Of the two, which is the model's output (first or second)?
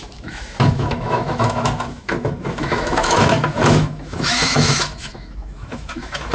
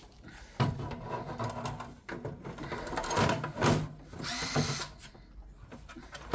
first